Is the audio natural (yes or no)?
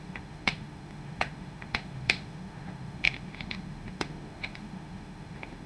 no